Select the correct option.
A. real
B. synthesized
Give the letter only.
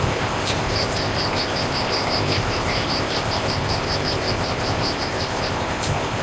B